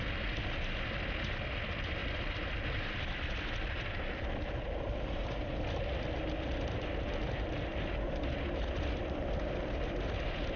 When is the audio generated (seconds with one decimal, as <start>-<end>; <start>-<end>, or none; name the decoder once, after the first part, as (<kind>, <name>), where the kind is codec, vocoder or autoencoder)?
none